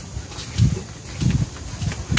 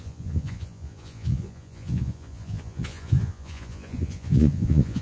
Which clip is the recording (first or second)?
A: first